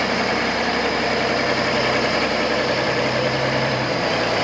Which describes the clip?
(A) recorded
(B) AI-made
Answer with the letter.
B